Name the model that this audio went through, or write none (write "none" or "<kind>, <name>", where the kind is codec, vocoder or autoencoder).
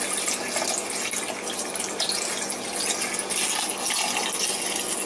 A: none